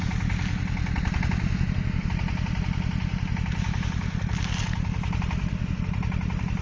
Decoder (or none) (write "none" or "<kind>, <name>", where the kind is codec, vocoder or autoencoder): none